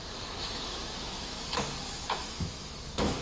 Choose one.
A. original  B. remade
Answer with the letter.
B